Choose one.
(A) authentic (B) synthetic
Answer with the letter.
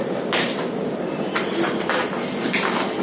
A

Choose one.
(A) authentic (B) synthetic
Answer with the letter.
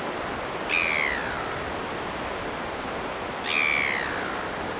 A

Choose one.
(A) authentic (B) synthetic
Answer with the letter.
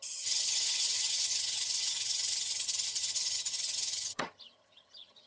B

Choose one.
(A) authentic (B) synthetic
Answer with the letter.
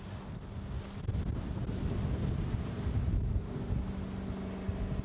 A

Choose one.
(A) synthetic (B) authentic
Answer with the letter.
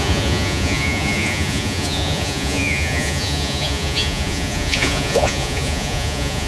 A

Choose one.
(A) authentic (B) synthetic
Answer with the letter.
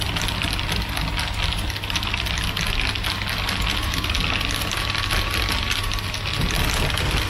A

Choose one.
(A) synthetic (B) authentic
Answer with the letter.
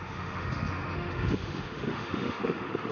A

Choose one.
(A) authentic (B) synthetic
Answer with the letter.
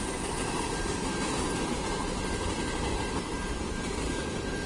B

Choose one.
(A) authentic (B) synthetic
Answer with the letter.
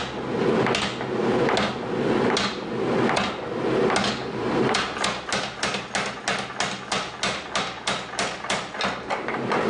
A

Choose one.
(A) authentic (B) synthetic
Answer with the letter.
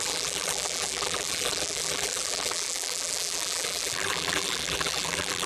B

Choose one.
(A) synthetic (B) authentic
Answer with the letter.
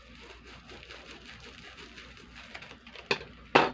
B